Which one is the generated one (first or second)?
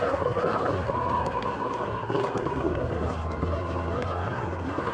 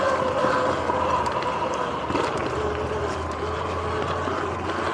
first